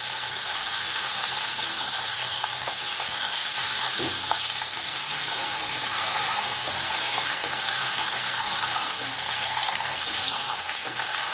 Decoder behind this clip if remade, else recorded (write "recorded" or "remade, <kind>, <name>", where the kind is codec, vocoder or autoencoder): remade, codec, SNAC